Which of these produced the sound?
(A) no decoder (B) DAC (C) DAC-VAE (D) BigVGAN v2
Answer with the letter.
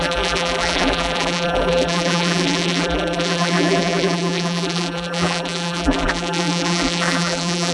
D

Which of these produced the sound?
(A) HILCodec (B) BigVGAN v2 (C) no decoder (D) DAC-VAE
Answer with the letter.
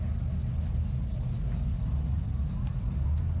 C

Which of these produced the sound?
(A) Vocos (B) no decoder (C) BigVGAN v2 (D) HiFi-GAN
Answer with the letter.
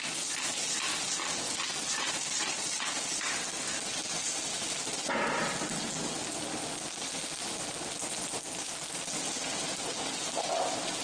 B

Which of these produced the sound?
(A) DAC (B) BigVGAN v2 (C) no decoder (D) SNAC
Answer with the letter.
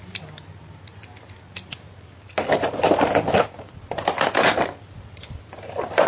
C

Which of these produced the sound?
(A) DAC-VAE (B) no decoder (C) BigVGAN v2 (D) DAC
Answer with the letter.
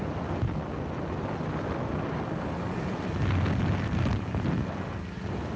B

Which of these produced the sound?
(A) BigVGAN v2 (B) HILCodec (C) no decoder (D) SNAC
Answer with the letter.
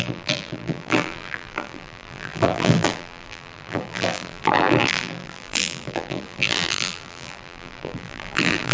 A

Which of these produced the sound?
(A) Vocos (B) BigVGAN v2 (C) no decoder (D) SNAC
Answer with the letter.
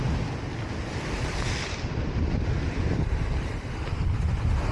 C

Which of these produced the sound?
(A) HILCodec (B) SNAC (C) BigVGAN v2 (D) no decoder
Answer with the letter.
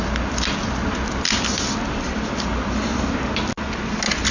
D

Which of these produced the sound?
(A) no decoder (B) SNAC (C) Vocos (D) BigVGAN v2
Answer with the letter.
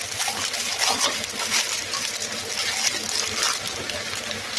A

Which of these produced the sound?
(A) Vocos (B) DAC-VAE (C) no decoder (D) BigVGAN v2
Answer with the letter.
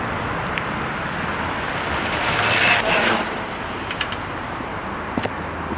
D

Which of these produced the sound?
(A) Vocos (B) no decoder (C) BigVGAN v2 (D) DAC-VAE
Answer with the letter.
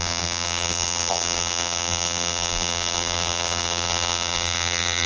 C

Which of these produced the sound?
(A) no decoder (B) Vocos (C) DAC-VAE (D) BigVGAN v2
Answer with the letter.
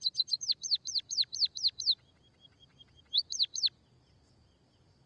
D